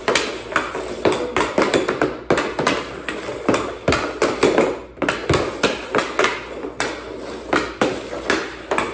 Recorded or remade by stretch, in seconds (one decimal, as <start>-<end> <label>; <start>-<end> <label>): 0.0-8.9 recorded